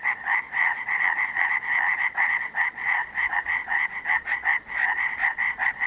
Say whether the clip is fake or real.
fake